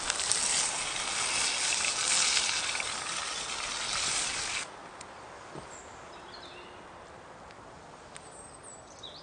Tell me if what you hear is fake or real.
real